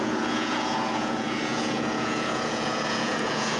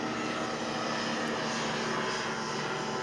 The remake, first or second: first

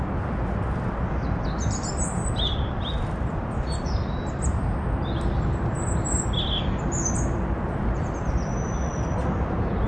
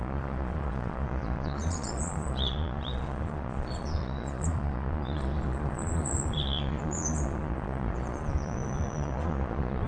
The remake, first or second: second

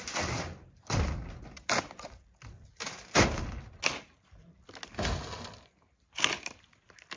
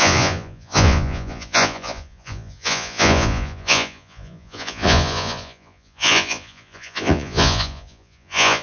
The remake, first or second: second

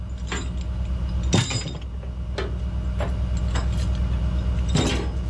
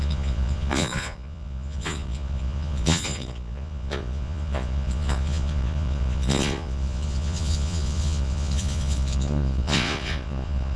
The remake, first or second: second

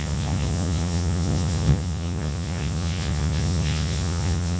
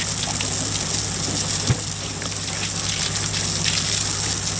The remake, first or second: first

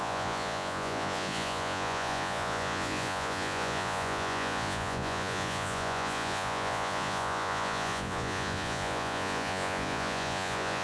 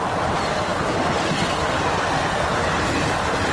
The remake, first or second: first